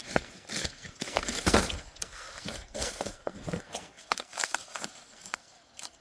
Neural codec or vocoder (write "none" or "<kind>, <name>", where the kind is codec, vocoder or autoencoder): codec, SNAC